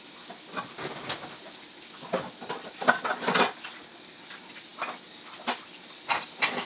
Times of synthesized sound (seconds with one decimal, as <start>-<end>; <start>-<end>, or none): none